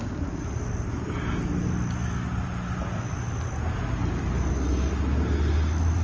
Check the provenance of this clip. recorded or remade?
recorded